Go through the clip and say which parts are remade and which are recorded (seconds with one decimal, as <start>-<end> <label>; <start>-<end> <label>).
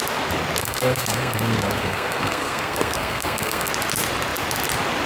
0.0-0.6 recorded; 0.6-3.7 remade; 3.7-5.1 recorded